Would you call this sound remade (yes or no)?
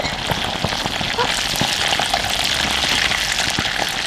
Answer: no